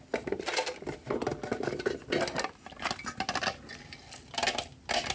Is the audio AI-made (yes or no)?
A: no